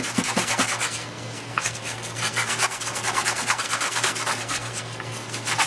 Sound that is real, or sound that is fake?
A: fake